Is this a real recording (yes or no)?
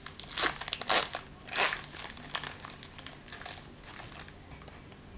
yes